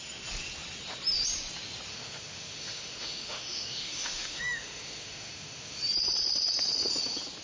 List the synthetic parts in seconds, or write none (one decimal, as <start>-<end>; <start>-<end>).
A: 1.9-5.8